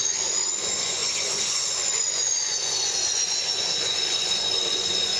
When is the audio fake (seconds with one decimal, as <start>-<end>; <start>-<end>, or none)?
0.0-5.2